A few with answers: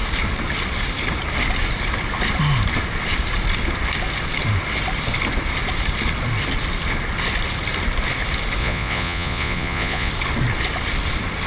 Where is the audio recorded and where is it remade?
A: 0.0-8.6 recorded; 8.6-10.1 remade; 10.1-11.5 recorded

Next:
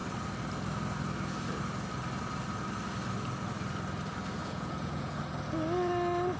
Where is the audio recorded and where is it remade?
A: 0.0-4.4 recorded; 4.4-5.2 remade; 5.2-6.4 recorded

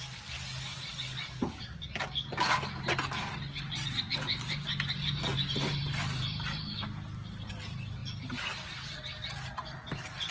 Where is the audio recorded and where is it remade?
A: 0.0-10.3 recorded

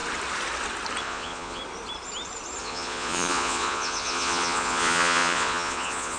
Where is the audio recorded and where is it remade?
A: 0.0-1.0 recorded; 1.0-1.6 remade; 1.6-2.6 recorded; 2.6-6.2 remade

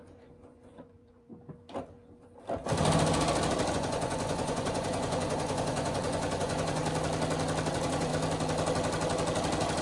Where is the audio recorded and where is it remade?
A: 0.0-1.3 remade; 1.3-3.7 recorded; 3.7-6.8 remade; 6.8-7.7 recorded; 7.7-8.1 remade; 8.1-9.8 recorded

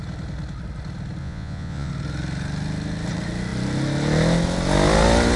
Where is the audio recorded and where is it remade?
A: 0.0-1.2 recorded; 1.2-1.9 remade; 1.9-5.4 recorded

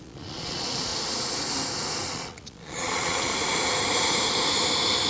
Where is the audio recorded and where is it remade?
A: 0.0-0.9 remade; 0.9-2.1 recorded; 2.1-3.3 remade; 3.3-5.1 recorded